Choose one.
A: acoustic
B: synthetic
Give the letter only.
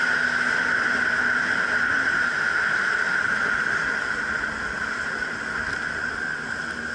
A